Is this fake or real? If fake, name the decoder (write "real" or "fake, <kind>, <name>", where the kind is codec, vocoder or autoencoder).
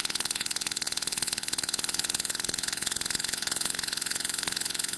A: fake, vocoder, Vocos